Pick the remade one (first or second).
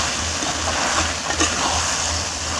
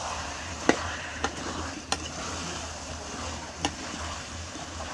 second